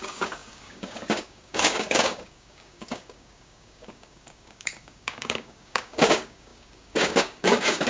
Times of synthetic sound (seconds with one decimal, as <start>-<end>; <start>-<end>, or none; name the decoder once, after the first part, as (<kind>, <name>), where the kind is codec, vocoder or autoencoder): 0.0-7.9 (codec, DAC)